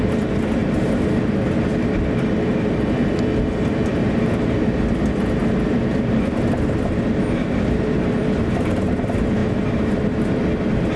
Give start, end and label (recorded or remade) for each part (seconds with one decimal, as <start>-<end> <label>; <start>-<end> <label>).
0.0-11.0 recorded

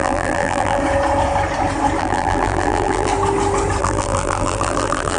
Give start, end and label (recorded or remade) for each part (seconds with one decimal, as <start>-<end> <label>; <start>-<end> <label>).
0.0-0.8 remade; 0.8-2.0 recorded; 2.0-3.1 remade; 3.1-3.8 recorded; 3.8-5.2 remade

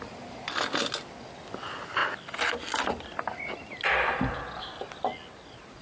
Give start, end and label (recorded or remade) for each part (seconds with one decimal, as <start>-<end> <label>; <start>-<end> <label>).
0.0-5.8 recorded

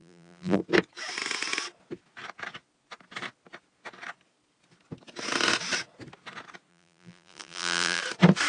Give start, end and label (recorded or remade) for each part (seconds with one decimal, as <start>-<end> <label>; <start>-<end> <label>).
0.0-0.6 remade; 0.6-6.7 recorded; 6.7-8.0 remade; 8.0-8.5 recorded